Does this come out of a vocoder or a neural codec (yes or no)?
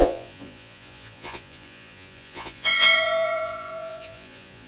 yes